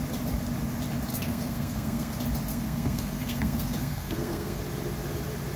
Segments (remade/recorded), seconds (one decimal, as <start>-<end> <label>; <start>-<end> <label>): 0.0-1.1 recorded; 1.1-2.1 remade; 2.1-2.5 recorded; 2.5-4.6 remade; 4.6-5.6 recorded